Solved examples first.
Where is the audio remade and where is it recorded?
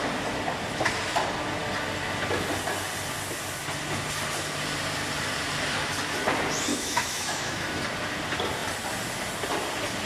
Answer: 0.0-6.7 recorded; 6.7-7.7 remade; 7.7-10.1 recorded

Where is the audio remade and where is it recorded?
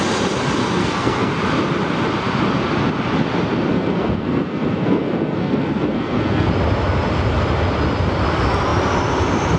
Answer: 0.0-0.8 recorded; 0.8-1.3 remade; 1.3-3.7 recorded; 3.7-6.5 remade; 6.5-9.6 recorded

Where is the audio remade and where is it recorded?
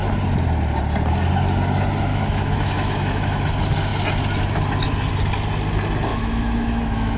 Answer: 0.0-2.1 recorded; 2.1-3.4 remade; 3.4-6.1 recorded; 6.1-7.2 remade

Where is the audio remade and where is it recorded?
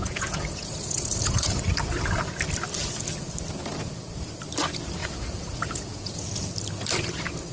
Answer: 0.0-1.6 remade; 1.6-5.0 recorded; 5.0-6.2 remade; 6.2-7.5 recorded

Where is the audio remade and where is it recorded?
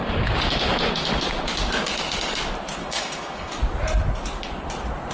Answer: 0.0-2.8 recorded; 2.8-3.5 remade; 3.5-5.1 recorded